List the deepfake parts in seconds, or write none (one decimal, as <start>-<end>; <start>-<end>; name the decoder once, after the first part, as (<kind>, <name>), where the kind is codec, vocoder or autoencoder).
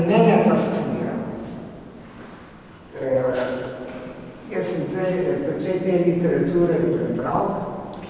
2.6-3.8 (codec, HILCodec); 6.8-7.4